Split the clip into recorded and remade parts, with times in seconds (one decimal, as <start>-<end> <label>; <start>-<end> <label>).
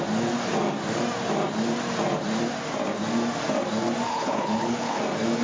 0.0-4.1 recorded; 4.1-5.0 remade; 5.0-5.4 recorded